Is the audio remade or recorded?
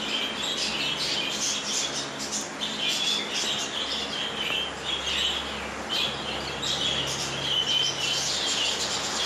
recorded